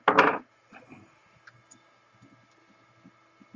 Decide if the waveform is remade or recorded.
recorded